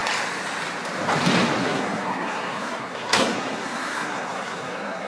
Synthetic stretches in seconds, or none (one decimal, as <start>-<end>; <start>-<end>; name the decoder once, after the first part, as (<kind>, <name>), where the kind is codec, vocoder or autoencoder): 1.6-5.1 (codec, SNAC)